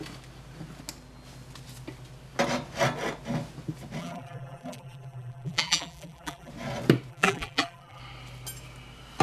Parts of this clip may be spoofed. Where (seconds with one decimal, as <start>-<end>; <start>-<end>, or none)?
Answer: 4.0-6.5; 7.1-8.0